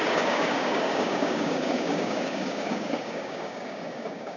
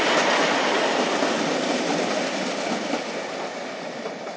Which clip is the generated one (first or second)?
first